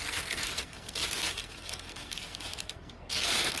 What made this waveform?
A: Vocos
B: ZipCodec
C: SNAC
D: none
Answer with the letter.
C